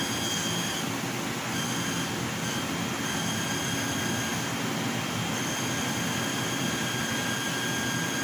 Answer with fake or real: real